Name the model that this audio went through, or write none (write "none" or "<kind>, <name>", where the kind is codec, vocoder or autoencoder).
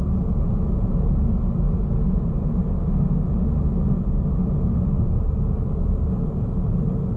none